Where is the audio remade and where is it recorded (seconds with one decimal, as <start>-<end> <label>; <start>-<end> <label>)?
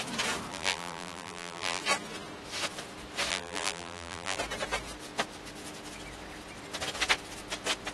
0.0-0.5 recorded; 0.5-1.8 remade; 1.8-3.3 recorded; 3.3-4.4 remade; 4.4-7.9 recorded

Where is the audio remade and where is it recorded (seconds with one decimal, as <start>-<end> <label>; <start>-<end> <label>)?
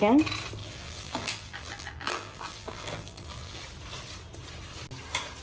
0.0-0.6 recorded; 0.6-3.6 remade; 3.6-5.4 recorded